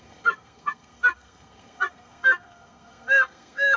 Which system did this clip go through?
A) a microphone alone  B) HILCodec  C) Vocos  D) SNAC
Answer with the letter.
D